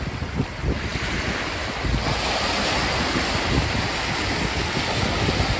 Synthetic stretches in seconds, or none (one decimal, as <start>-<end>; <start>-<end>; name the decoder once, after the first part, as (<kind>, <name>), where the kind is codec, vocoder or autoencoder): none